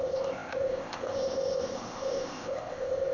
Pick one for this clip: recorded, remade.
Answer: remade